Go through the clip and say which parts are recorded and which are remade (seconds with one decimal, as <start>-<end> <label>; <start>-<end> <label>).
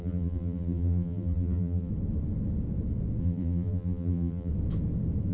0.0-1.9 remade; 1.9-3.2 recorded; 3.2-4.5 remade; 4.5-5.3 recorded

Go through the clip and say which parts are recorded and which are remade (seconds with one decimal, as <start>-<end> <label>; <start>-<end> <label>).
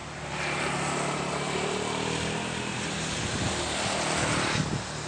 0.0-5.1 recorded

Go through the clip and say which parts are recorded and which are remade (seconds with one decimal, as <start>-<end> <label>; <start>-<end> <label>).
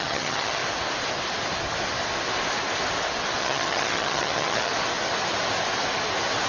0.0-0.6 remade; 0.6-3.4 recorded; 3.4-4.7 remade; 4.7-6.5 recorded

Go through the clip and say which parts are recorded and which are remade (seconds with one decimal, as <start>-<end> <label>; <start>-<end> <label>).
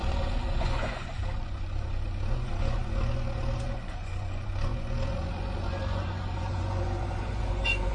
0.0-7.9 remade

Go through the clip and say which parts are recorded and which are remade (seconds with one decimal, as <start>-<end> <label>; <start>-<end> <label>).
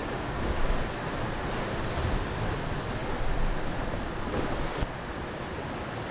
0.0-0.6 remade; 0.6-6.1 recorded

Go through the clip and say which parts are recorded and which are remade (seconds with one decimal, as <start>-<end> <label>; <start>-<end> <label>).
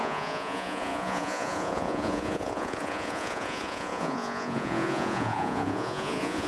0.0-6.5 remade